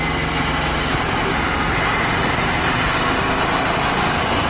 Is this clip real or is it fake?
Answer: real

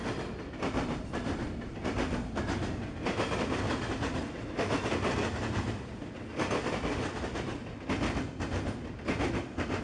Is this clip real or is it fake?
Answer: real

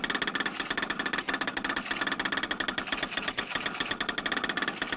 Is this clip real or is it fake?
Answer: real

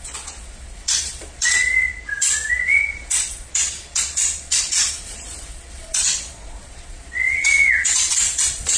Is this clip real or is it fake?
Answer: fake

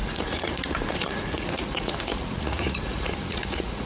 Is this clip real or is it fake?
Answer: fake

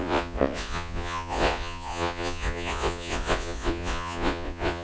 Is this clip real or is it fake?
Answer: fake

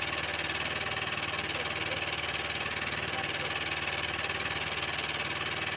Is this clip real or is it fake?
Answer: real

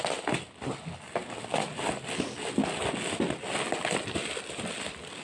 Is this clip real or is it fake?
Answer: real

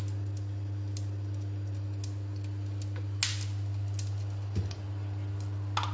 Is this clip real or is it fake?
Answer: real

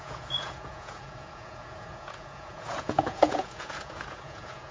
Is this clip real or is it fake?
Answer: fake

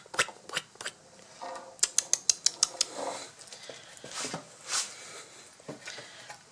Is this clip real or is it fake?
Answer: real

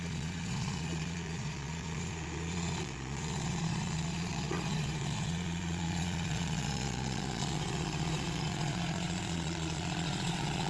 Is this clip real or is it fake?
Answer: fake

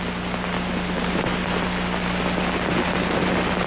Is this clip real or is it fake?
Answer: real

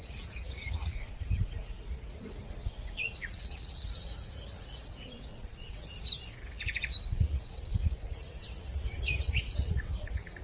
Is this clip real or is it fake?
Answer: fake